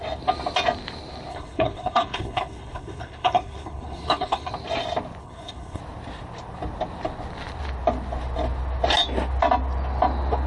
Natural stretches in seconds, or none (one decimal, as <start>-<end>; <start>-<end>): 0.0-1.3; 4.5-5.2; 5.8-10.5